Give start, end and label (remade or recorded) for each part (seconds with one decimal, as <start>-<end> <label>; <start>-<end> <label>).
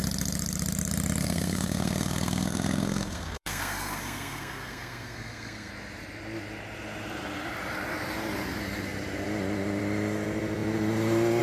0.0-1.2 recorded; 1.2-5.7 remade; 5.7-11.4 recorded